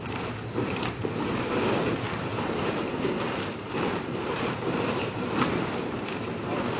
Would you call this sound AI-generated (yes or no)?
yes